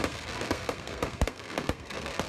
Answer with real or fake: fake